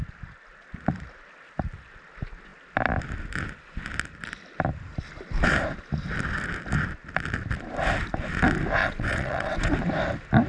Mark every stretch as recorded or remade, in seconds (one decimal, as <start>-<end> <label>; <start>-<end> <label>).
0.0-8.8 recorded; 8.8-9.7 remade; 9.7-10.5 recorded